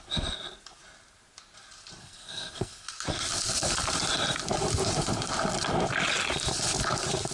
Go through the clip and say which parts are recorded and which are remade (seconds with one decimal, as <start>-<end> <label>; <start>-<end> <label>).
0.0-2.0 recorded; 2.0-2.9 remade; 2.9-7.3 recorded